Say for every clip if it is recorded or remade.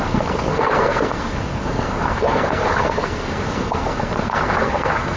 remade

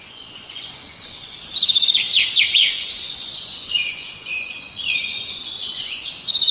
remade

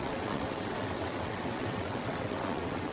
remade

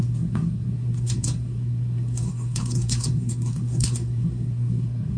remade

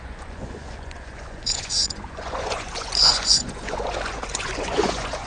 remade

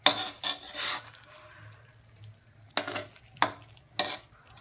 recorded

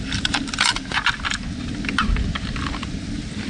recorded